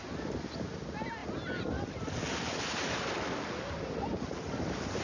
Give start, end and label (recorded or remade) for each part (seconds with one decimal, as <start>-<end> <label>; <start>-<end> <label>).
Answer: 0.0-5.0 recorded